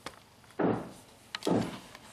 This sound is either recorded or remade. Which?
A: recorded